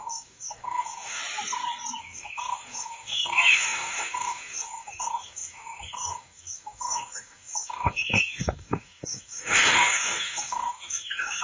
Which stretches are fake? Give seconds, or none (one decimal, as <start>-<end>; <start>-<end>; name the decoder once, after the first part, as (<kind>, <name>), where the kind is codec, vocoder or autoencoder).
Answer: 0.0-1.2 (codec, DAC); 2.0-11.4